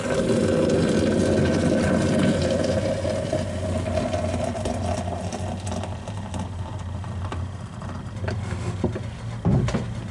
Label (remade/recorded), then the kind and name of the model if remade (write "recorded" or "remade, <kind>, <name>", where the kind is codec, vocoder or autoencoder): recorded